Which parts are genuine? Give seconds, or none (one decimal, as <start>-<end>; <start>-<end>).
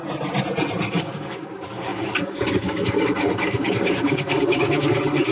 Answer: 0.0-1.0